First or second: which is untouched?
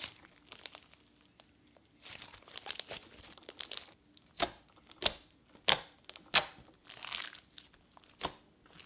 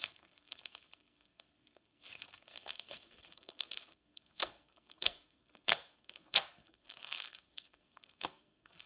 first